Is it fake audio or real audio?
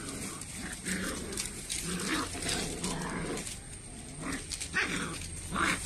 real